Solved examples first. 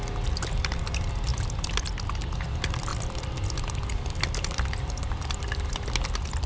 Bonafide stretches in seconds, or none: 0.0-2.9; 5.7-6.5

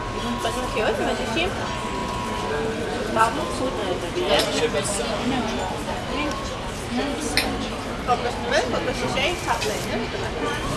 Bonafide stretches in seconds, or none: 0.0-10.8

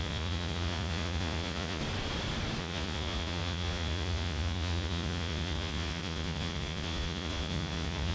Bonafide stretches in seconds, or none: 1.8-2.6

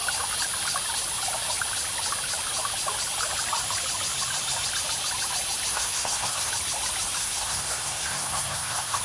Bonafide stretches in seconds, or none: 0.0-5.7; 6.5-7.2

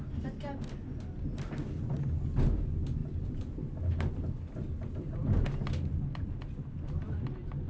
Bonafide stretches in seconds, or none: 0.0-7.7

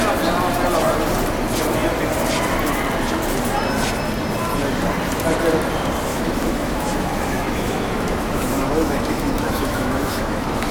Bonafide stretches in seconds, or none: 0.0-6.1

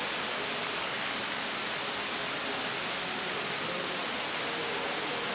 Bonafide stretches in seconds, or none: 0.0-0.6; 1.4-5.3

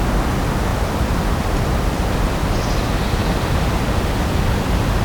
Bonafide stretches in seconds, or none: 0.0-0.7; 2.3-3.2; 4.6-5.0